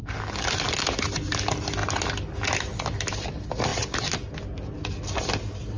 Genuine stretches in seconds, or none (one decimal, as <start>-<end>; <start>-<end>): 0.0-5.8